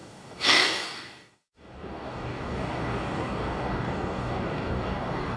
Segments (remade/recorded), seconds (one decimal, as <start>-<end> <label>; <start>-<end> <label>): 0.0-5.4 remade